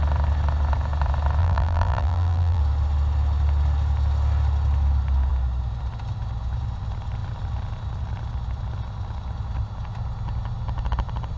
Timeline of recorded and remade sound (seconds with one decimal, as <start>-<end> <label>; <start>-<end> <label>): 0.0-1.4 recorded; 1.4-2.6 remade; 2.6-11.4 recorded